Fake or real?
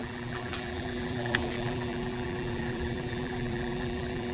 fake